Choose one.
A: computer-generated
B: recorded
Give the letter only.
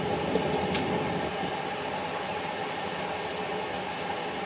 B